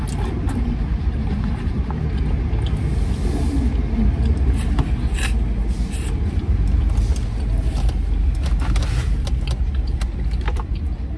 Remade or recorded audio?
recorded